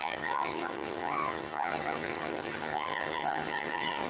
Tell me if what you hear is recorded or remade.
remade